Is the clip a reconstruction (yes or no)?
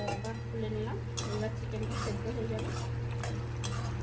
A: no